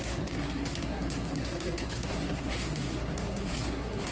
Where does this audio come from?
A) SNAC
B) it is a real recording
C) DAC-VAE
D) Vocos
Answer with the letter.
A